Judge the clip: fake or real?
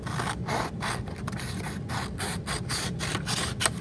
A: real